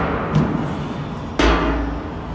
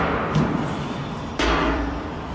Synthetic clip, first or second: second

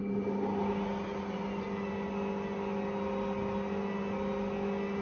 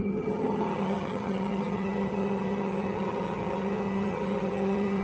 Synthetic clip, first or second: second